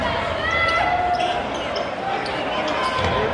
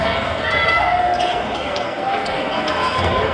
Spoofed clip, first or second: second